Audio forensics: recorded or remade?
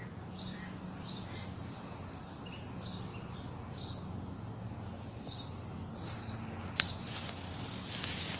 recorded